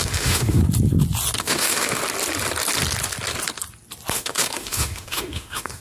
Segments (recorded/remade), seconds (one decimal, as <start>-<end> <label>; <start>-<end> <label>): 0.0-0.6 remade; 0.6-1.4 recorded; 1.4-2.0 remade; 2.0-4.1 recorded; 4.1-5.8 remade